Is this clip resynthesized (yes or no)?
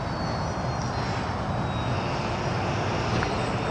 no